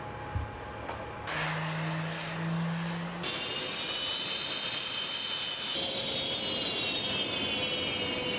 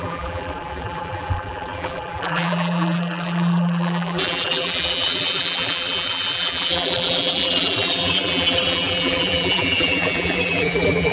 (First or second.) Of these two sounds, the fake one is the second